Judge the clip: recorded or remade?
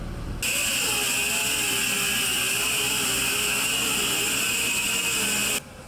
recorded